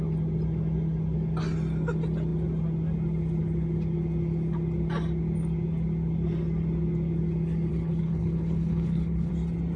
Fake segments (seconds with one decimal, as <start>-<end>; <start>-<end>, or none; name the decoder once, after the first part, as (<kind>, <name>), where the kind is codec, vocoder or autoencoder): 7.7-9.3 (codec, HILCodec)